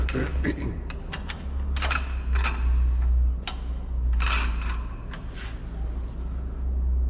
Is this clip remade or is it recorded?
recorded